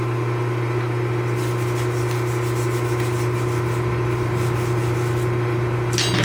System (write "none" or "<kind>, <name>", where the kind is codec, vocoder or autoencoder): none